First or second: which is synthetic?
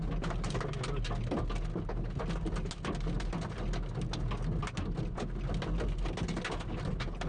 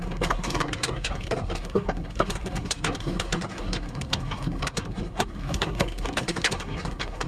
second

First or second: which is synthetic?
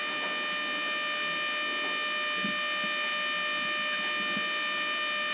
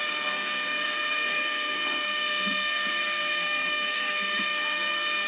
second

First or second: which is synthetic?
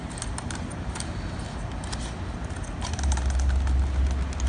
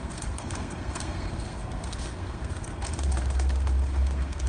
second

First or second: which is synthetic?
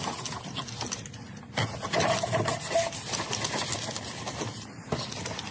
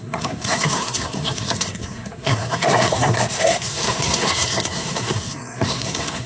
second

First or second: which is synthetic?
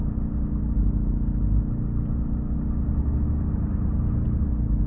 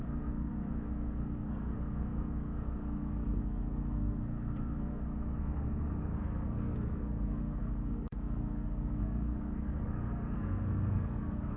second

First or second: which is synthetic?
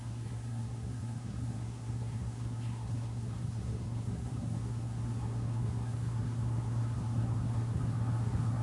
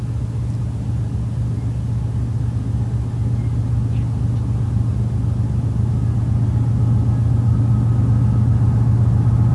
first